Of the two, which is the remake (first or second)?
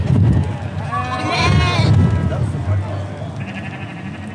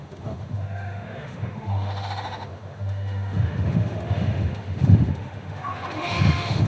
second